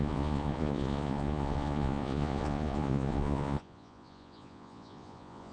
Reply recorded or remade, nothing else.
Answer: remade